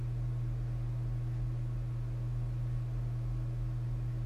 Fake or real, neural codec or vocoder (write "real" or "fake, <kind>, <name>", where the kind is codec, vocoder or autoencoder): real